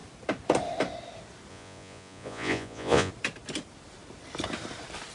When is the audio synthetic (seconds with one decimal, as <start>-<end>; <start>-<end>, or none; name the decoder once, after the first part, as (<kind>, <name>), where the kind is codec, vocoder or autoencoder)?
1.5-3.1 (vocoder, Vocos)